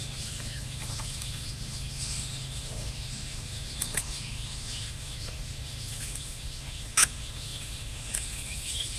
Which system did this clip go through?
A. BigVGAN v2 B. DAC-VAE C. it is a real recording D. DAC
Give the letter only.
B